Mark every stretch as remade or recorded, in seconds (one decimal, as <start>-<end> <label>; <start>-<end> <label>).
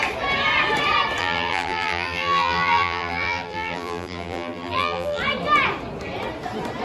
0.0-1.2 recorded; 1.2-5.2 remade; 5.2-6.8 recorded